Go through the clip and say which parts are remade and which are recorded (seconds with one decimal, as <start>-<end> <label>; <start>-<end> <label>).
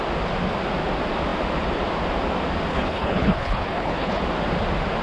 0.0-2.7 recorded; 2.7-4.2 remade; 4.2-5.0 recorded